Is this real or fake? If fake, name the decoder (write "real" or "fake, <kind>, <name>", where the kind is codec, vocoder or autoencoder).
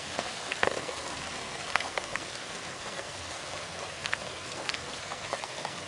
fake, codec, SNAC